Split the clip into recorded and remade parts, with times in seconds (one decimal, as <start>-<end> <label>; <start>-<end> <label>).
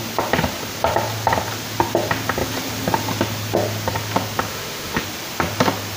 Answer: 0.0-4.5 recorded; 4.5-5.0 remade; 5.0-6.0 recorded